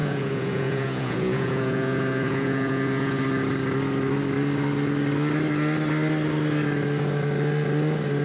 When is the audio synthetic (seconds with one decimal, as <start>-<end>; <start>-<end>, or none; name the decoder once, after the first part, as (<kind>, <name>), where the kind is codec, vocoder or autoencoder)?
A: 0.0-3.2 (vocoder, Vocos)